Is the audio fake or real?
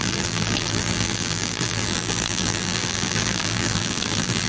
fake